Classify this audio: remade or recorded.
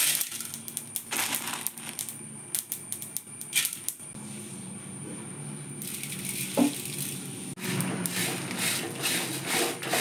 recorded